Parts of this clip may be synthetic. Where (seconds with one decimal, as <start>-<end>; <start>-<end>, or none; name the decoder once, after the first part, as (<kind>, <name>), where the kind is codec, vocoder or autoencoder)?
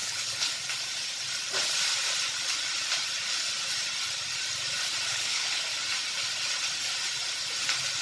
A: 0.0-0.5 (codec, HILCodec); 5.1-5.6